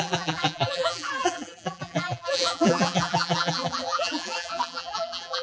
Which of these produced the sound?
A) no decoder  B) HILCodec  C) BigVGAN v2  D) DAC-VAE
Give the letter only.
C